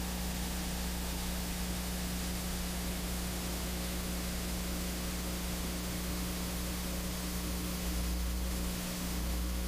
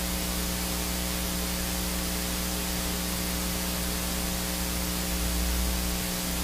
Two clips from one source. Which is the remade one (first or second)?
first